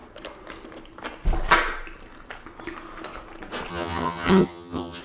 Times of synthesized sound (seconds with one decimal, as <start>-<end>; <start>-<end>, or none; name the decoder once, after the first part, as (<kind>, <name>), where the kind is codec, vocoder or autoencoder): 3.7-5.0 (vocoder, HiFi-GAN)